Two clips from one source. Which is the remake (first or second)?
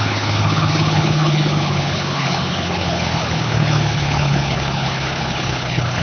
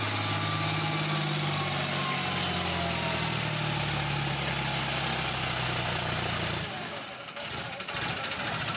first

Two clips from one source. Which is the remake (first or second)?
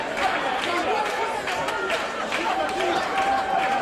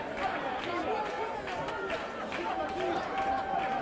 first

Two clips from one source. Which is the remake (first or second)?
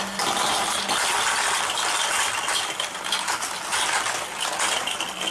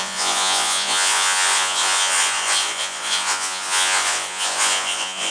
second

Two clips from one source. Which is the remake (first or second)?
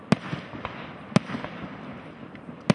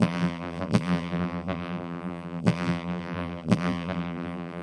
second